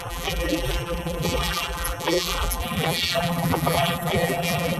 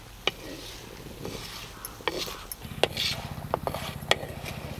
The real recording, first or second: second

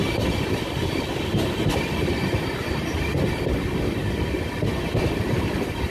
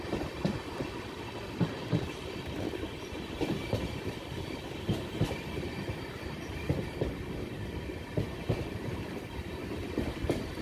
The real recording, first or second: first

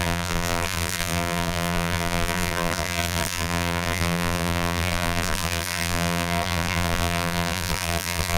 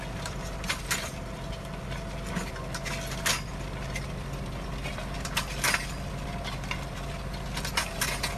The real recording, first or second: second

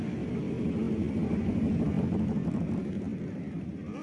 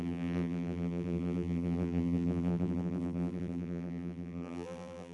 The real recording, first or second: first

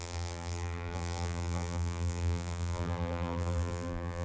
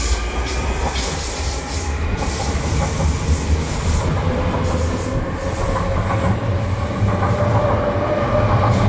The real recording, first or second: second